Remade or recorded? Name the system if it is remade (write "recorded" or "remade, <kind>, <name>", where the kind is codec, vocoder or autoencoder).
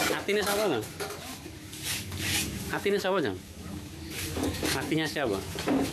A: remade, codec, DAC